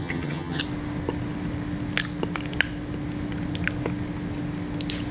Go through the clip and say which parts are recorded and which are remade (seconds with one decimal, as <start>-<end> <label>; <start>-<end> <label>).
0.0-0.6 remade; 0.6-5.1 recorded